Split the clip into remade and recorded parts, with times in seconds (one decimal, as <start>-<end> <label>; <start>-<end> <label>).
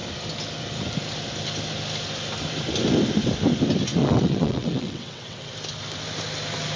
0.0-4.0 recorded; 4.0-5.5 remade; 5.5-6.8 recorded